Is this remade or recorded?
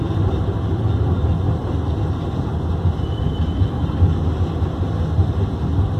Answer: remade